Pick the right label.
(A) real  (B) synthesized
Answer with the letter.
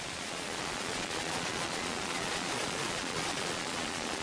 B